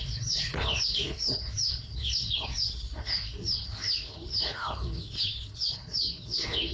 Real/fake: fake